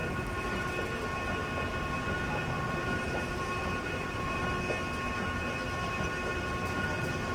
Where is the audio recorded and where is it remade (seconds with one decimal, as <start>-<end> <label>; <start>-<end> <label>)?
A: 0.0-0.7 remade; 0.7-2.8 recorded; 2.8-4.4 remade; 4.4-7.3 recorded